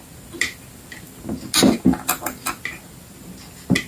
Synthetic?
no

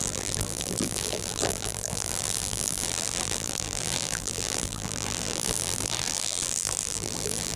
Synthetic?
yes